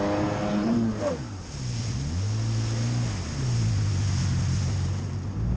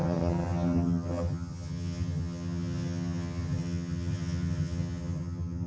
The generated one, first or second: second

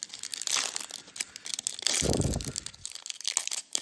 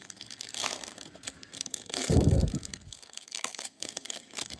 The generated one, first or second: second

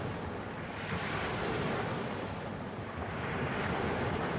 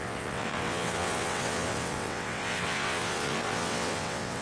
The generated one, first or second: second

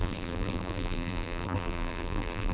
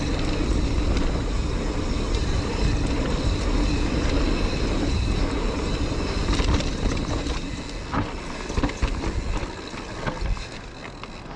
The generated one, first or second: first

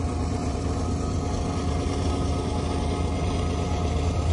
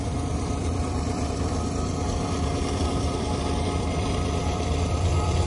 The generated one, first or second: second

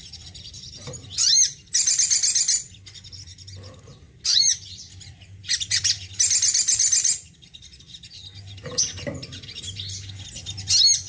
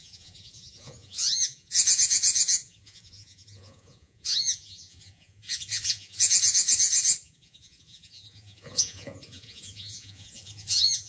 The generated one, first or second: second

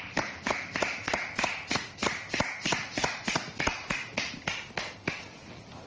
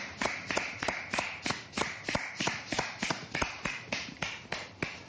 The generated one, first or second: second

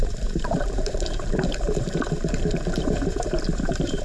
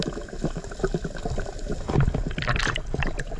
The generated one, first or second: first